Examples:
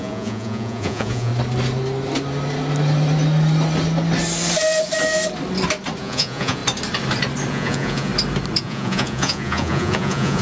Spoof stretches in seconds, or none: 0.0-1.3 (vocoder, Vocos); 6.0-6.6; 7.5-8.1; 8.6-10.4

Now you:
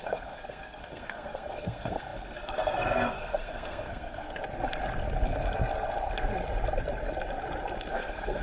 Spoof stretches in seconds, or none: 0.0-4.4 (codec, SNAC); 7.9-8.4

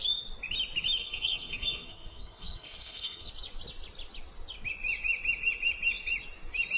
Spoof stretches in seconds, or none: 1.0-3.3 (codec, SNAC)